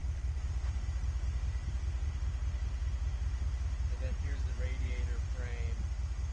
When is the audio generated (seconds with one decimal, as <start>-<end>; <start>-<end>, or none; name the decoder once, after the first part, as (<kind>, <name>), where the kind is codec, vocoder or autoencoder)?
0.0-5.5 (vocoder, BigVGAN v2)